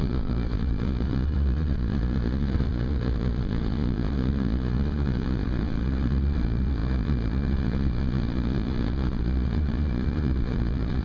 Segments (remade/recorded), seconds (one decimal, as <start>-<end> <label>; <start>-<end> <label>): 0.0-11.0 remade